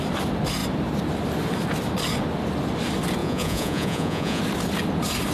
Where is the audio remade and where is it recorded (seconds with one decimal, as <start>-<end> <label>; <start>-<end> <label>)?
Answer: 0.0-3.2 recorded; 3.2-4.4 remade; 4.4-5.3 recorded